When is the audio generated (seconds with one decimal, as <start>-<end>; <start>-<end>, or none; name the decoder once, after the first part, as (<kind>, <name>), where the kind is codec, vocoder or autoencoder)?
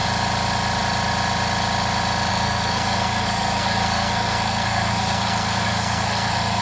2.3-6.6 (codec, SNAC)